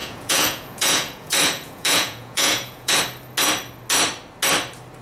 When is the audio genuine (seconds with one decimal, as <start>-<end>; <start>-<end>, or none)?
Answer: 3.0-5.0

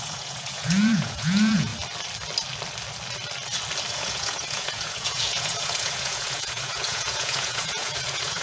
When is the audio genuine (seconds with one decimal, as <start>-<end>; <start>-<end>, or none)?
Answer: 1.7-3.9

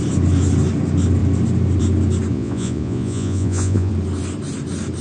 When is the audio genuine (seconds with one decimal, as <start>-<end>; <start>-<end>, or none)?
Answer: 0.0-2.3; 3.9-5.0